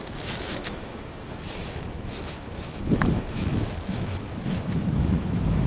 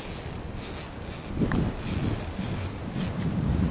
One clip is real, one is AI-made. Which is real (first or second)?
second